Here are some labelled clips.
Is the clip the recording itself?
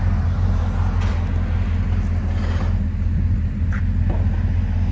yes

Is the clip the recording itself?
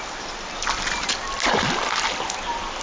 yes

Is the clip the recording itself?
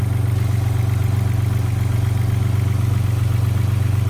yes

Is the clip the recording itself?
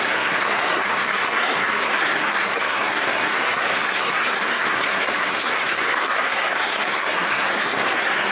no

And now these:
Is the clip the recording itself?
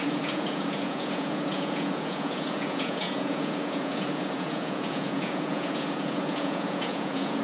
no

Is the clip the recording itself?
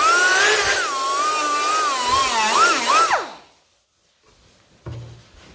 yes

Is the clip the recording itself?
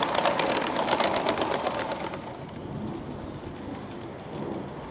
yes